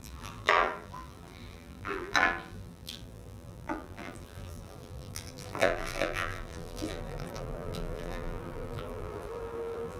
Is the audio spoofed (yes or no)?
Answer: yes